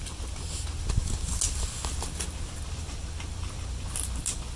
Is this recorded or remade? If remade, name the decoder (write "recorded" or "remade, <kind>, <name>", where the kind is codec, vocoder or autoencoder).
recorded